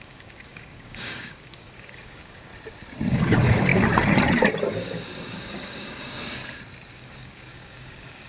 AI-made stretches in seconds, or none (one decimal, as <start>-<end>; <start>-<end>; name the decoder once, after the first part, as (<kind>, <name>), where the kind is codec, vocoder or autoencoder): 0.0-2.5 (codec, DAC); 3.1-3.7; 4.7-6.4; 6.9-8.3